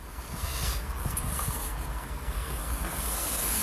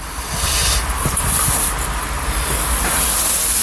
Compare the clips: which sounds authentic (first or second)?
second